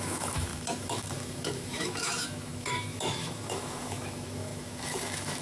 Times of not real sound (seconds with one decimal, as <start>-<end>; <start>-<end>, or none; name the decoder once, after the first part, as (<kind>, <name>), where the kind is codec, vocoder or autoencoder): 0.0-5.4 (autoencoder, DAC-VAE)

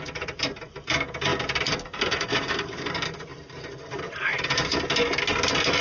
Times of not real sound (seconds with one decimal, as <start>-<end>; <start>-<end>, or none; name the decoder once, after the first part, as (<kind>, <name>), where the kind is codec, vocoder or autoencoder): 0.0-4.7 (vocoder, BigVGAN v2); 5.3-5.8

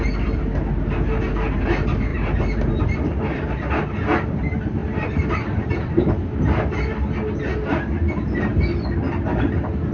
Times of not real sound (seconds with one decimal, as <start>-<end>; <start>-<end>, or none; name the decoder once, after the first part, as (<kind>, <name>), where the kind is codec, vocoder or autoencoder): 2.1-3.1 (vocoder, BigVGAN v2); 4.8-6.1

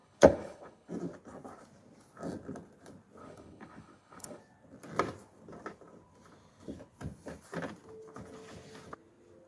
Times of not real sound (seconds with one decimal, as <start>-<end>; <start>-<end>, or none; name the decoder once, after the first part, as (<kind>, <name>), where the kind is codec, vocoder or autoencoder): 0.0-0.9 (codec, HILCodec); 3.2-4.4